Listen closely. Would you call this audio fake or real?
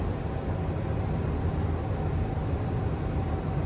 real